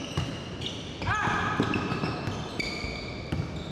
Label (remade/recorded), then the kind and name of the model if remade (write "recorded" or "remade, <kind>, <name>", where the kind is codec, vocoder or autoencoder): recorded